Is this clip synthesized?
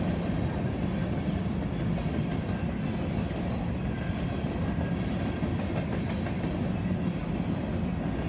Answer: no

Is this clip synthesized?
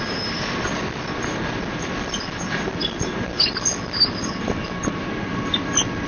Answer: no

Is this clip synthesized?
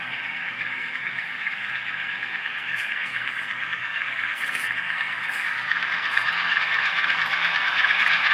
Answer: yes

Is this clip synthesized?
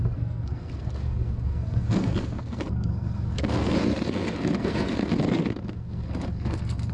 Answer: yes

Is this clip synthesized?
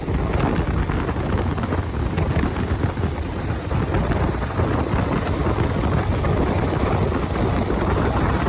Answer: no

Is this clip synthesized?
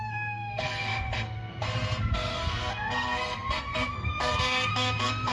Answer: yes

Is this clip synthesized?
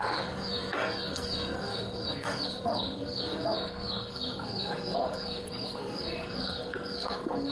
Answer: yes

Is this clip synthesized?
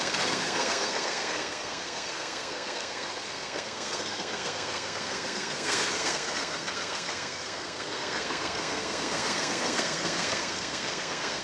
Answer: yes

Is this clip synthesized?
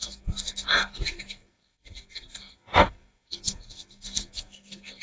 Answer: yes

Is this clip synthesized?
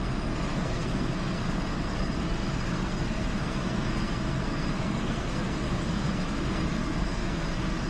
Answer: yes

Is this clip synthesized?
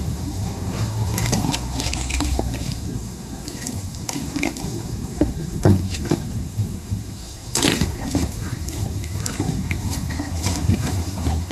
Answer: yes